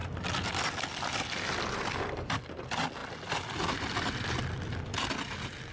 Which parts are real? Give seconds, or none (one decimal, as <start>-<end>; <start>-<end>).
0.0-5.7